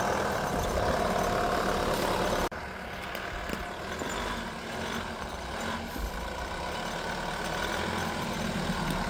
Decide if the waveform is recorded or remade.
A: recorded